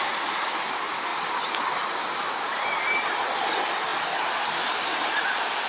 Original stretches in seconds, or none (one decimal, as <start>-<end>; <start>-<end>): 0.0-1.1; 2.8-3.9